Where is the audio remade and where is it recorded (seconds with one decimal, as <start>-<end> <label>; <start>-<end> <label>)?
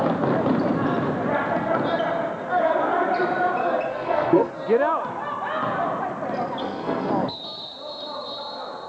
0.0-3.9 recorded; 3.9-4.5 remade; 4.5-6.6 recorded; 6.6-7.1 remade; 7.1-8.9 recorded